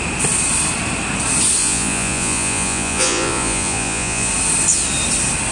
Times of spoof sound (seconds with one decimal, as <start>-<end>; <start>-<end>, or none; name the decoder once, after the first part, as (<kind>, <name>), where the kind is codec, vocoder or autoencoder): 1.6-4.3 (vocoder, Vocos)